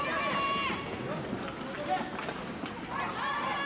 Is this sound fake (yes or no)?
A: no